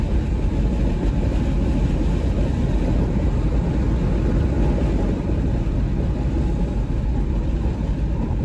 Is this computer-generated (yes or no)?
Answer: no